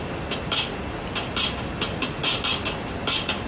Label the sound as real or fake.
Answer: real